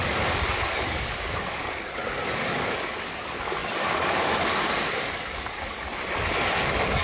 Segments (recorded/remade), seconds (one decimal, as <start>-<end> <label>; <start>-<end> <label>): 0.0-5.9 remade; 5.9-6.5 recorded; 6.5-7.0 remade